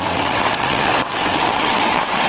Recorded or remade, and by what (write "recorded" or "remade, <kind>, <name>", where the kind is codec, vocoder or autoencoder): remade, vocoder, WaveNeXt